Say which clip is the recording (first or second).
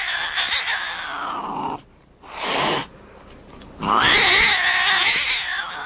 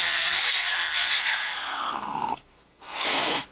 first